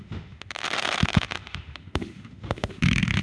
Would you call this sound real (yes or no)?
no